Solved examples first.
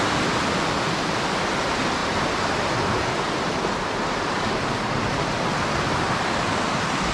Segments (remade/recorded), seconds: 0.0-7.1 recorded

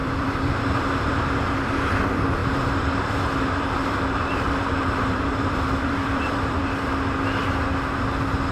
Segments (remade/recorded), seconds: 0.0-1.2 remade; 1.2-2.4 recorded; 2.4-6.6 remade; 6.6-8.5 recorded